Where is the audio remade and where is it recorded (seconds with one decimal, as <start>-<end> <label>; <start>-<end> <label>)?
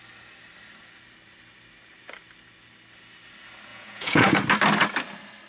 0.0-3.7 recorded; 3.7-4.4 remade; 4.4-5.5 recorded